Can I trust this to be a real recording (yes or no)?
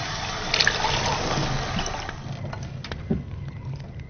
yes